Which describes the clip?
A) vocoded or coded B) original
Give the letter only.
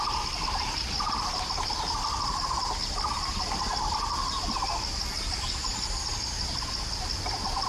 B